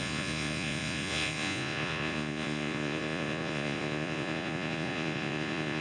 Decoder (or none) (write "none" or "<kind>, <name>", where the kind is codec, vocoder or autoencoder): vocoder, Vocos